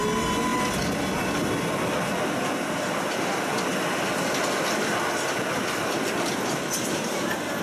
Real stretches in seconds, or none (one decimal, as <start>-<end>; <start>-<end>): 0.0-7.6